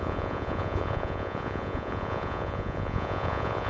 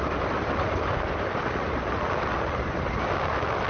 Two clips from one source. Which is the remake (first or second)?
first